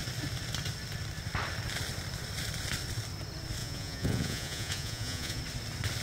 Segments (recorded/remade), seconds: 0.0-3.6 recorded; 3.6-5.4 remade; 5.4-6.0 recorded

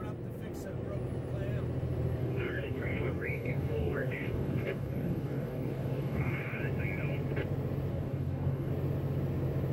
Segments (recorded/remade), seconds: 0.0-2.2 recorded; 2.2-6.6 remade; 6.6-7.9 recorded; 7.9-8.7 remade; 8.7-9.7 recorded

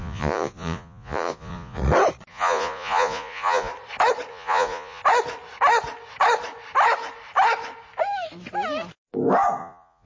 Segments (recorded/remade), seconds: 0.0-1.8 remade; 1.8-2.3 recorded; 2.3-3.7 remade; 3.7-4.3 recorded; 4.3-5.0 remade; 5.0-9.6 recorded; 9.6-10.1 remade

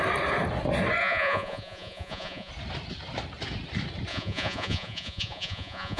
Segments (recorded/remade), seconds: 0.0-1.0 recorded; 1.0-2.5 remade; 2.5-4.1 recorded; 4.1-6.0 remade

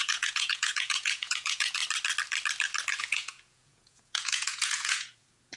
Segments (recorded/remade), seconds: 0.0-1.8 remade; 1.8-3.0 recorded; 3.0-5.6 remade

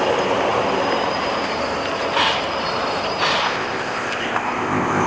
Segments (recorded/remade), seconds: 0.0-3.4 recorded; 3.4-5.1 remade